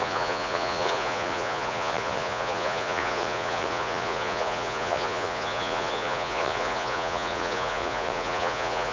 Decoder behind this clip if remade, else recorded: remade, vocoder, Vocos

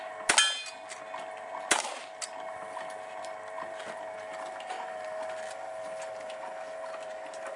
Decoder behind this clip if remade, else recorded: recorded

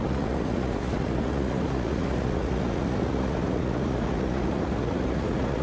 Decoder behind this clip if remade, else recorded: remade, vocoder, Vocos